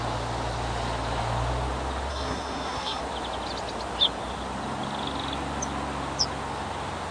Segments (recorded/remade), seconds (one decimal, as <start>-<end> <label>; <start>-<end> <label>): 0.0-2.1 recorded; 2.1-3.0 remade; 3.0-7.1 recorded